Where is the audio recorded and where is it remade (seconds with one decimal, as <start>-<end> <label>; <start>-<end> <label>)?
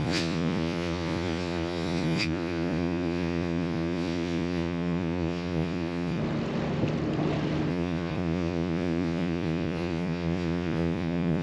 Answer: 0.0-6.2 remade; 6.2-7.7 recorded; 7.7-11.4 remade